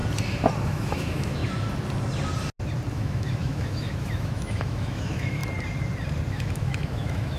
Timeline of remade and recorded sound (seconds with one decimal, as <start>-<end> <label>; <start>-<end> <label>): 0.0-0.6 recorded; 0.6-1.4 remade; 1.4-2.9 recorded; 2.9-5.4 remade; 5.4-6.3 recorded; 6.3-7.4 remade